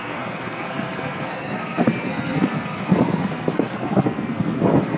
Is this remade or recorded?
remade